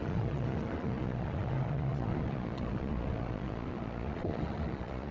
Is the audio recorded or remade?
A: remade